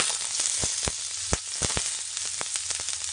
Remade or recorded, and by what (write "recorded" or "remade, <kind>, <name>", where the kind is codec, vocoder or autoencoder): recorded